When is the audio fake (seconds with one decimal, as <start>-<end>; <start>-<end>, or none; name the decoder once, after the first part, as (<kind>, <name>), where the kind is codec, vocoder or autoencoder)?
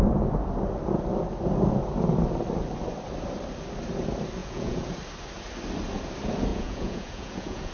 4.4-4.9 (vocoder, Vocos); 6.5-7.7